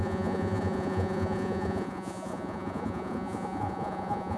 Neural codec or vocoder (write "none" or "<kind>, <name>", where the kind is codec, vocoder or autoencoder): vocoder, Vocos